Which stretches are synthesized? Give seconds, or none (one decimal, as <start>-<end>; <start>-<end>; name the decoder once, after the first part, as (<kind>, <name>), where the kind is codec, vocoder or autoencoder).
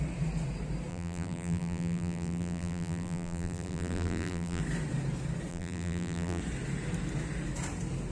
0.9-4.6 (vocoder, BigVGAN v2); 5.5-6.4